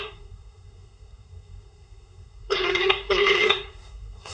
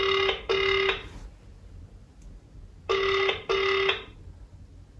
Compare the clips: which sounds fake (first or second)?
first